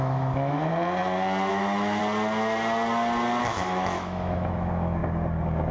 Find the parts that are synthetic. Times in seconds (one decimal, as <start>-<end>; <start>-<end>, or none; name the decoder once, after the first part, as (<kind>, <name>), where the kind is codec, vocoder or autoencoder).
0.0-0.7 (autoencoder, DAC-VAE); 1.5-2.0; 3.4-5.0